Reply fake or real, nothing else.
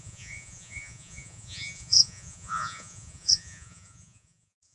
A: fake